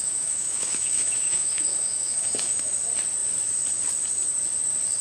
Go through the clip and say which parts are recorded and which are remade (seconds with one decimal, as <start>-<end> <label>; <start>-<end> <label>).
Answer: 0.0-2.7 remade; 2.7-5.0 recorded